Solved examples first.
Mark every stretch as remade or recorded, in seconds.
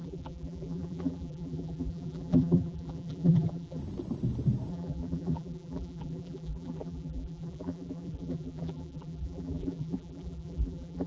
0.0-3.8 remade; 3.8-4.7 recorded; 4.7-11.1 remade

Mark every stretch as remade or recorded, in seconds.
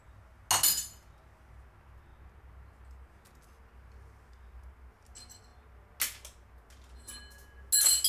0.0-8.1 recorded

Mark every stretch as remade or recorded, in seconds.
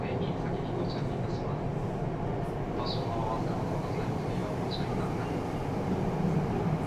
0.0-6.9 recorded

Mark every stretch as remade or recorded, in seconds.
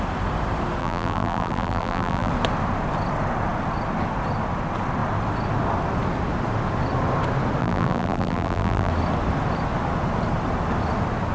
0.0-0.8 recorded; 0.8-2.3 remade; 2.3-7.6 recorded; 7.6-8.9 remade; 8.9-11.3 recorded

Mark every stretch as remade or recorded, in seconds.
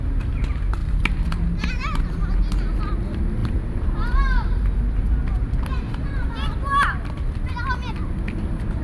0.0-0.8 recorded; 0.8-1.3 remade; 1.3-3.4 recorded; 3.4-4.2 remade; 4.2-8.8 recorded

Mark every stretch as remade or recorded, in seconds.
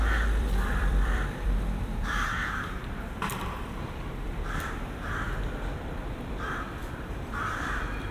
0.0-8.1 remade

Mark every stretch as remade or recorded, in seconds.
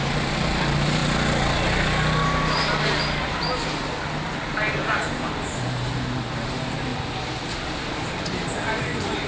0.0-1.0 remade; 1.0-4.7 recorded; 4.7-6.9 remade; 6.9-7.8 recorded; 7.8-9.3 remade